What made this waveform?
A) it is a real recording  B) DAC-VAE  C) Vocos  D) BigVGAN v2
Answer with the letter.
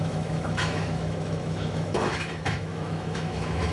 B